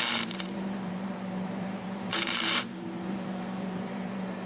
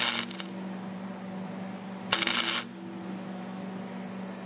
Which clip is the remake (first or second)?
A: first